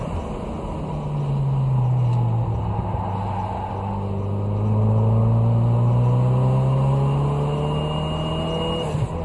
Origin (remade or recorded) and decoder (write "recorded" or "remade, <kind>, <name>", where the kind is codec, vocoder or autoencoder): recorded